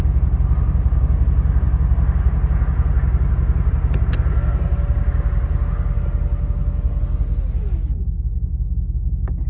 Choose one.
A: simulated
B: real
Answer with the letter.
B